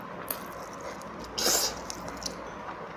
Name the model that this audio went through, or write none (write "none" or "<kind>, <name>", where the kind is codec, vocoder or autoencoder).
none